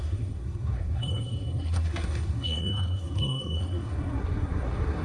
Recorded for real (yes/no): no